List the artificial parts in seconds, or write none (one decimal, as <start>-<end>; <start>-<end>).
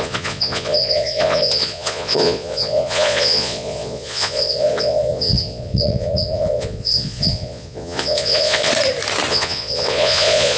0.0-8.7; 9.3-10.6